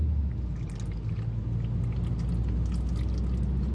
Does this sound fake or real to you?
real